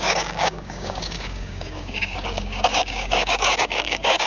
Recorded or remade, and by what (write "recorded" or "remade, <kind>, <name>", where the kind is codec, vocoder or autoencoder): remade, codec, DAC